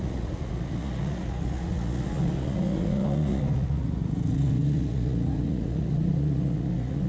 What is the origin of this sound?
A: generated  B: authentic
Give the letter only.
A